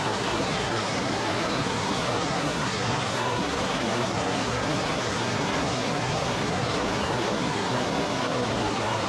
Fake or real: fake